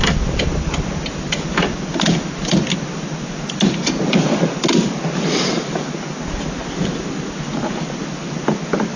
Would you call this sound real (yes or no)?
yes